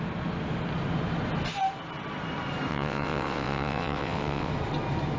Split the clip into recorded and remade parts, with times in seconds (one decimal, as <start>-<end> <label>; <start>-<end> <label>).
0.0-2.7 recorded; 2.7-4.5 remade; 4.5-5.2 recorded